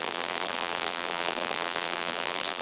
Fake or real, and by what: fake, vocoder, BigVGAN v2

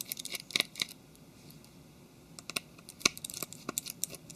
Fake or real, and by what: fake, vocoder, BigVGAN v2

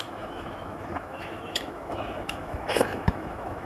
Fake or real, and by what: fake, autoencoder, DAC-VAE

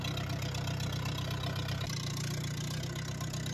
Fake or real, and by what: real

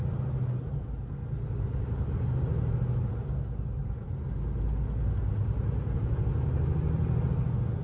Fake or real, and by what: real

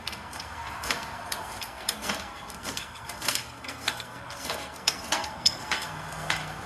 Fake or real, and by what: fake, codec, SNAC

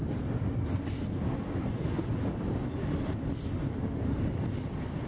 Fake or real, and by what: real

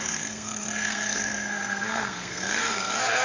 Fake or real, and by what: fake, codec, SNAC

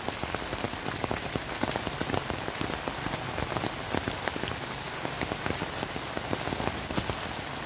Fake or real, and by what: real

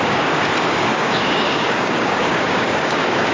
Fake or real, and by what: fake, codec, DAC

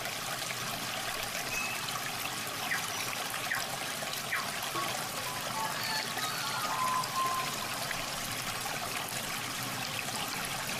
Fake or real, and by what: real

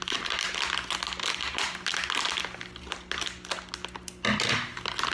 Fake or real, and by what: real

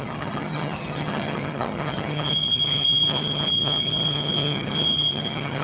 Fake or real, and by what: fake, vocoder, HiFi-GAN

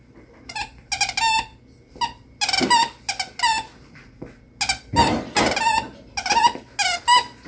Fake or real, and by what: real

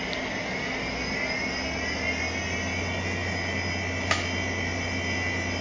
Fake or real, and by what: real